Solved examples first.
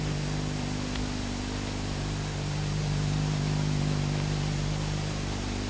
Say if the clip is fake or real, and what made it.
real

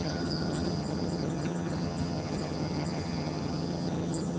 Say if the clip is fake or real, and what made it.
fake, vocoder, HiFi-GAN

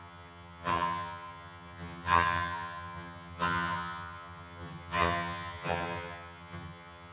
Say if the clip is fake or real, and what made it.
fake, vocoder, HiFi-GAN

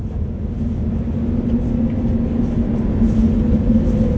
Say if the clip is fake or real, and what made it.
real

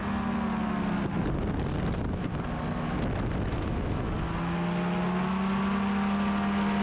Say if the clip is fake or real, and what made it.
real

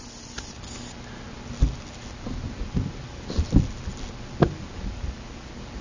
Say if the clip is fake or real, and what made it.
real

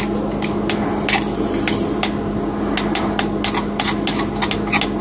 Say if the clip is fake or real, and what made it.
real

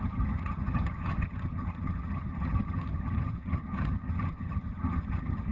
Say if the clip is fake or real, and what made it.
fake, vocoder, HiFi-GAN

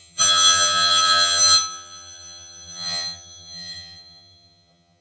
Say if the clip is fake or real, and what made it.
fake, vocoder, HiFi-GAN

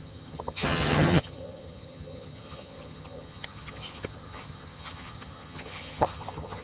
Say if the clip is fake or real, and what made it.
fake, vocoder, HiFi-GAN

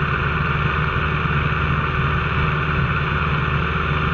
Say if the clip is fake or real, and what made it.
real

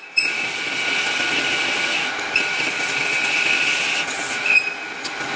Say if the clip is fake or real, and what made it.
real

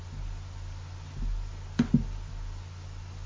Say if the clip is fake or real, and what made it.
real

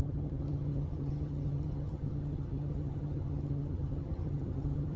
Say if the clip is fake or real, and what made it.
fake, vocoder, HiFi-GAN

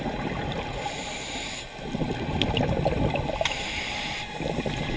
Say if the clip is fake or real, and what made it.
real